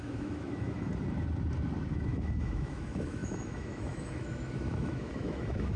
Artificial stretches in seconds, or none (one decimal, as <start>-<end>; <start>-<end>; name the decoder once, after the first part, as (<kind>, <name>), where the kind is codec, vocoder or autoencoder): 0.0-0.9 (autoencoder, DAC-VAE); 1.9-5.8